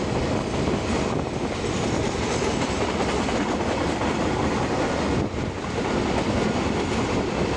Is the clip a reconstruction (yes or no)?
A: no